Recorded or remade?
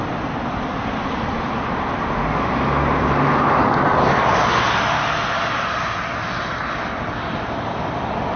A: recorded